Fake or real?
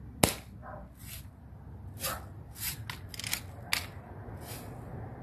real